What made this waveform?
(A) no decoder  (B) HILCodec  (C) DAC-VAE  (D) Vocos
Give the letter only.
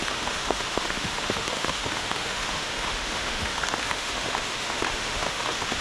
C